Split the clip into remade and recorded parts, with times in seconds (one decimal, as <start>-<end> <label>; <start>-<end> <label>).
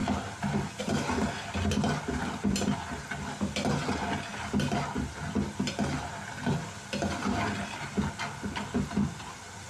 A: 0.0-9.7 recorded